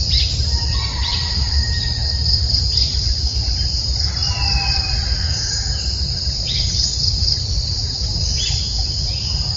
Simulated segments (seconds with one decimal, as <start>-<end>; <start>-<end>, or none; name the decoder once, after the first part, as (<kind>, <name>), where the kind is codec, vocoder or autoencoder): 0.0-4.2 (vocoder, BigVGAN v2); 4.7-9.6